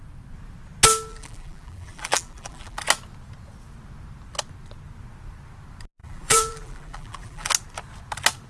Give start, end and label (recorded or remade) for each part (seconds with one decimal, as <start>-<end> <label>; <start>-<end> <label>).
0.0-1.1 recorded; 1.1-2.8 remade; 2.8-6.0 recorded; 6.0-7.5 remade; 7.5-8.5 recorded